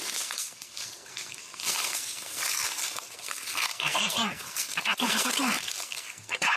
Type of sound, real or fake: fake